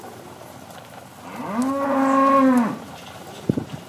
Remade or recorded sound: recorded